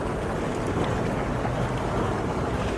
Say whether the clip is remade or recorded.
recorded